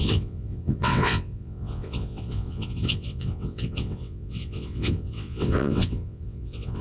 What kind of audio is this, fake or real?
fake